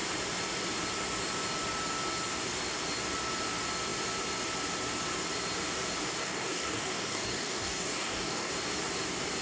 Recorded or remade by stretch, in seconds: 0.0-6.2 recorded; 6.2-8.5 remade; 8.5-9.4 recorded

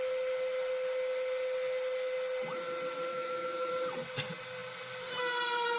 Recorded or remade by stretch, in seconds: 0.0-3.1 recorded; 3.1-3.7 remade; 3.7-5.8 recorded

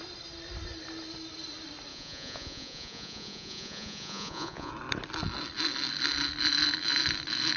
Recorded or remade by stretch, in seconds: 0.0-1.9 recorded; 1.9-4.7 remade; 4.7-7.6 recorded

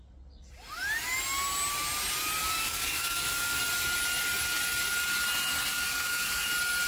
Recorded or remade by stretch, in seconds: 0.0-2.4 recorded; 2.4-3.6 remade; 3.6-5.7 recorded; 5.7-6.5 remade; 6.5-6.9 recorded

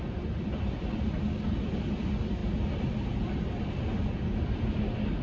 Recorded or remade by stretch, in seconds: 0.0-5.2 recorded